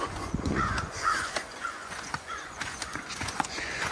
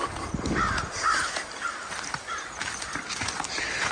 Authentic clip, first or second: second